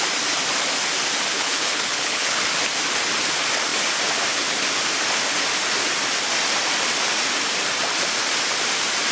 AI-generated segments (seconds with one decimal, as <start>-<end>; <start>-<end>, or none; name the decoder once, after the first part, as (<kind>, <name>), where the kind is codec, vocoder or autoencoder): 1.3-2.4 (codec, HILCodec)